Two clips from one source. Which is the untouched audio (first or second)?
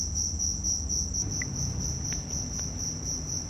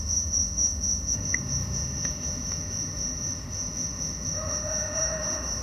first